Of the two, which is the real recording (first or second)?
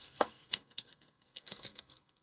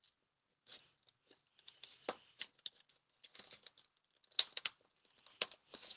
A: second